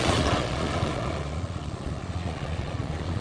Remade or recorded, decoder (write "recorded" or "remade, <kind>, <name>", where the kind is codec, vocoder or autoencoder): remade, vocoder, Vocos